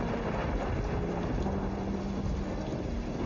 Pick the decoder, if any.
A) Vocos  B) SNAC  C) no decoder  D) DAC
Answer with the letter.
C